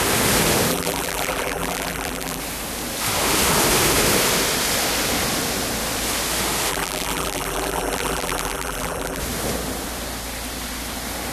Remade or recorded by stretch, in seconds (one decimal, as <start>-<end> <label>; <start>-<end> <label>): 0.0-0.7 recorded; 0.7-2.4 remade; 2.4-6.7 recorded; 6.7-9.2 remade; 9.2-11.3 recorded